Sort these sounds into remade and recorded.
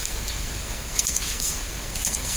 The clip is remade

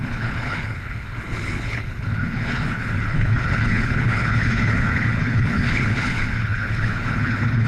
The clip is remade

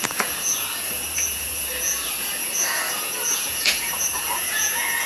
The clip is remade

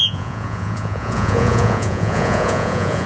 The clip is remade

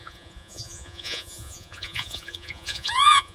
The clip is remade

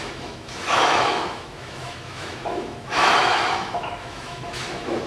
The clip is remade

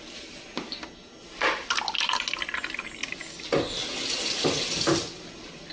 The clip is recorded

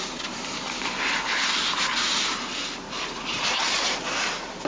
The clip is recorded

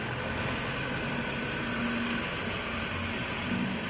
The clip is recorded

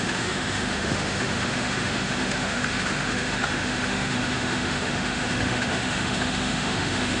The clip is remade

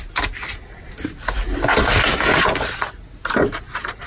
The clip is recorded